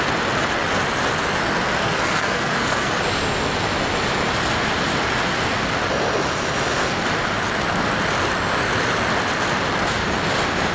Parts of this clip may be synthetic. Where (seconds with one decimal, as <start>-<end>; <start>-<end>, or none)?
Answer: 1.8-2.9